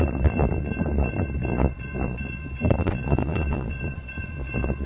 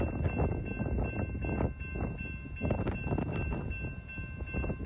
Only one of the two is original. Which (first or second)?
second